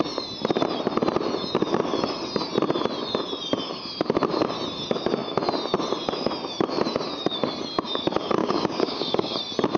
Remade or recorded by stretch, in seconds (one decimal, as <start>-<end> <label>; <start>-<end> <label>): 0.0-8.4 recorded; 8.4-9.4 remade; 9.4-9.8 recorded